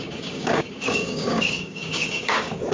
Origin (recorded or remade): remade